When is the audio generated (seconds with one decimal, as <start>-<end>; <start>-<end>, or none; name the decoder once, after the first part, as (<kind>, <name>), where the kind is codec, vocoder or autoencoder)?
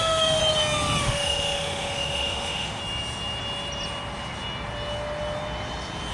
0.0-0.4 (autoencoder, DAC-VAE); 1.0-2.8